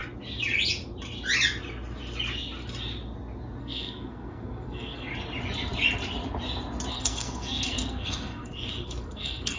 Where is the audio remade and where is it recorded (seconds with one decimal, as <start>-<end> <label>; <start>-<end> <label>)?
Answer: 0.0-3.6 recorded; 3.6-5.1 remade; 5.1-6.9 recorded; 6.9-9.6 remade